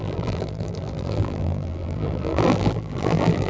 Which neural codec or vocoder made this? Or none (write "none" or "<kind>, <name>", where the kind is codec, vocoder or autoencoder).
vocoder, BigVGAN v2